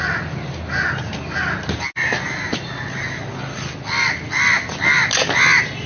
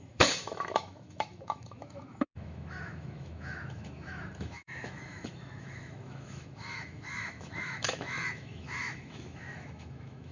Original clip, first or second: first